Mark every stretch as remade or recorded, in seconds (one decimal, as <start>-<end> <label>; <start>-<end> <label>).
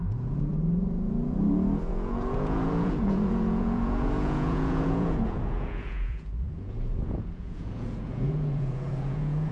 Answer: 0.0-0.5 remade; 0.5-1.9 recorded; 1.9-9.5 remade